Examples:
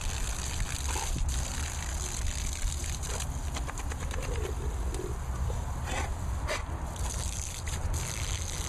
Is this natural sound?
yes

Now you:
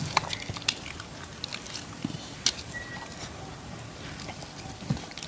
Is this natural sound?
yes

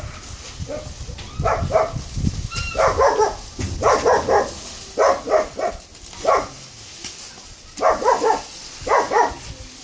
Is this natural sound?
yes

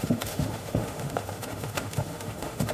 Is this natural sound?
no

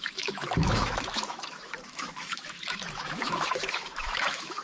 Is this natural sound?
no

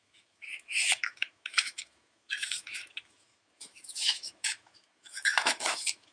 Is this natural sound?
no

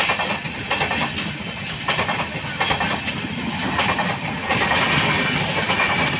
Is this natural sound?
yes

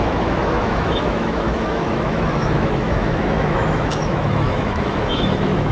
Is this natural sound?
no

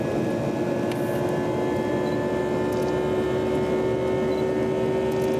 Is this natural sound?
yes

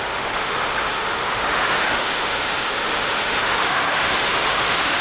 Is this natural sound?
no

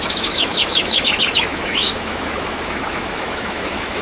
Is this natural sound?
no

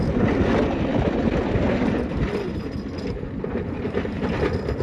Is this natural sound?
yes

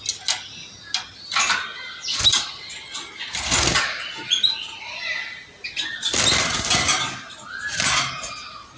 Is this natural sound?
yes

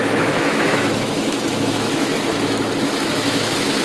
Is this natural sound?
no